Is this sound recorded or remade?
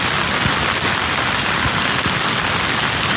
recorded